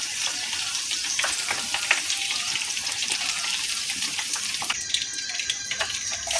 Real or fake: fake